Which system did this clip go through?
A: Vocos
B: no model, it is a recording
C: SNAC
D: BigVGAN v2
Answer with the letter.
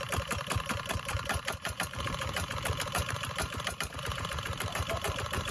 D